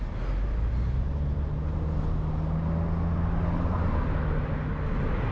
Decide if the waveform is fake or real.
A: real